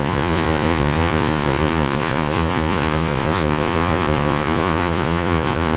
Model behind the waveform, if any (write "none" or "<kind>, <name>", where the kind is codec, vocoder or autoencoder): vocoder, Vocos